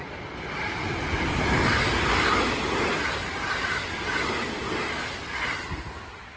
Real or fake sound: real